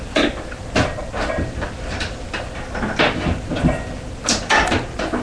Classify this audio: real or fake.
real